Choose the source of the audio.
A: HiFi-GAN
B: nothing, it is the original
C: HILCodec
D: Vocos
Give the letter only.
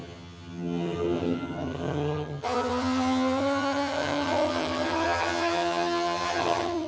A